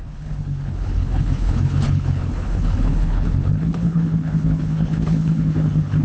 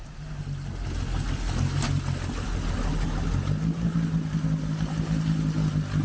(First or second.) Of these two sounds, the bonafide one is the second